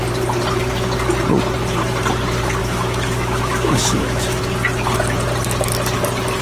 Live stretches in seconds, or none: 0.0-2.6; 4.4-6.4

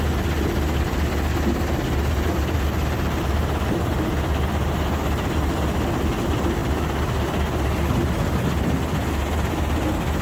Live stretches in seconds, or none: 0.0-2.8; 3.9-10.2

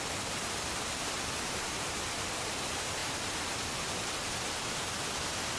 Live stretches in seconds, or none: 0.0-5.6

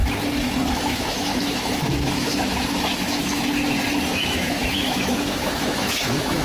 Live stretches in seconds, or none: 0.0-0.7; 3.2-4.1

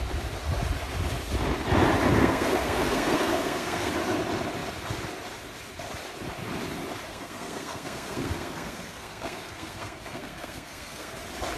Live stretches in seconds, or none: 0.0-2.2; 3.9-7.1; 11.1-11.6

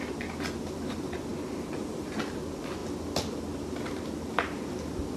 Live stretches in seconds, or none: 0.0-5.2

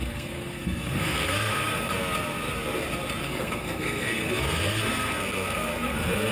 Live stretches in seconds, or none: 1.9-3.2

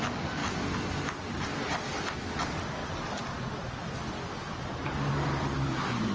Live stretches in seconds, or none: 0.4-1.7; 2.8-4.1